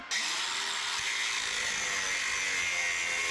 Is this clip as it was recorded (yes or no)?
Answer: yes